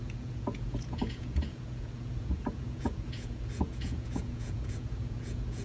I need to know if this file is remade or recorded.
remade